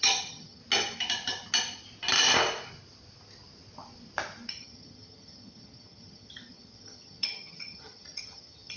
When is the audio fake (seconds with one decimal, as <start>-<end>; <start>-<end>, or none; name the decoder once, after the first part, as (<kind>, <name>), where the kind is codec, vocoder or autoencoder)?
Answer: 0.0-0.6 (vocoder, HiFi-GAN); 4.5-8.8